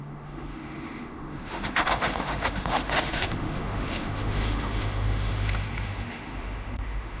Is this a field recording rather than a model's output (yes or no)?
no